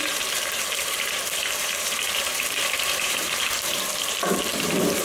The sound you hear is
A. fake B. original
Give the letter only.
A